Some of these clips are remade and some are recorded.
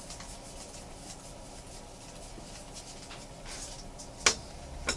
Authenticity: recorded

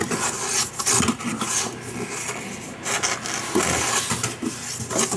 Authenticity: recorded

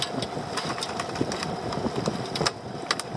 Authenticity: recorded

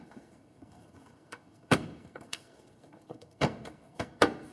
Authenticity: remade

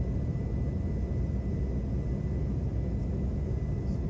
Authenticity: recorded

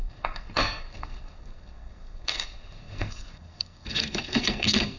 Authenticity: remade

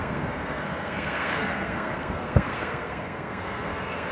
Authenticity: remade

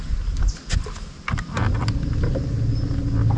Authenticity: recorded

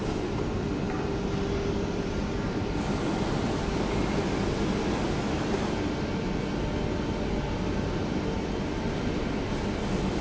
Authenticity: recorded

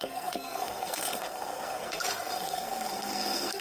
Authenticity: remade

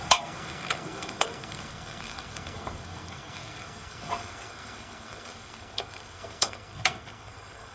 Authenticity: remade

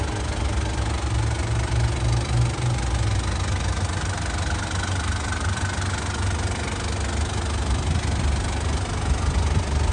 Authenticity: recorded